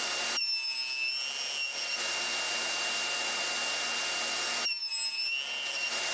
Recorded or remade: recorded